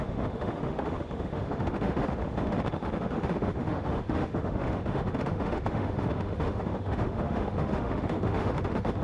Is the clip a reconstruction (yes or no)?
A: yes